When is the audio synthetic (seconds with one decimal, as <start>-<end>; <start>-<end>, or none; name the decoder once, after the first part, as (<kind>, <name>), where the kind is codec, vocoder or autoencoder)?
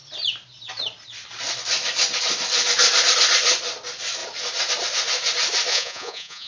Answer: 5.7-6.5 (vocoder, Vocos)